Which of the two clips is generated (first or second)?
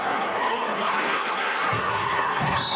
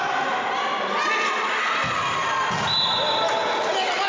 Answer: first